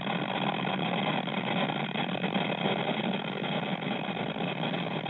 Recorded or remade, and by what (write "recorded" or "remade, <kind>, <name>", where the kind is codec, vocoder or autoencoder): remade, vocoder, BigVGAN v2